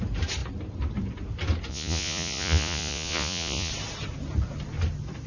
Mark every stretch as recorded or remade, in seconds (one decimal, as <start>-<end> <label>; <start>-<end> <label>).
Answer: 0.0-1.7 recorded; 1.7-3.7 remade; 3.7-5.3 recorded